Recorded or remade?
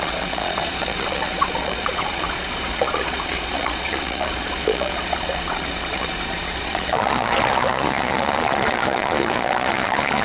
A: remade